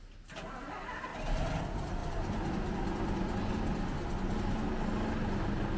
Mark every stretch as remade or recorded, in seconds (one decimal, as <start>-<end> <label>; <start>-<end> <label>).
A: 0.0-5.8 recorded